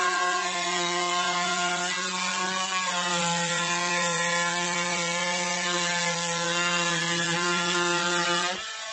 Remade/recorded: remade